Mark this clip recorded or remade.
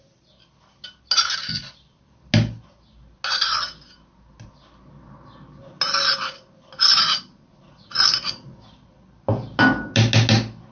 recorded